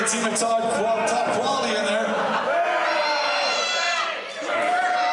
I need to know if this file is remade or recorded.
recorded